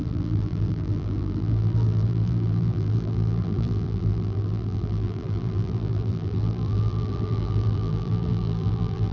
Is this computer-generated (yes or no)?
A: yes